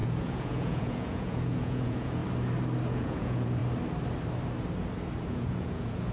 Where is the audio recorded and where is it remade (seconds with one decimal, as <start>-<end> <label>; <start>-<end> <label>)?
0.0-2.2 remade; 2.2-2.9 recorded; 2.9-3.6 remade; 3.6-5.3 recorded; 5.3-6.1 remade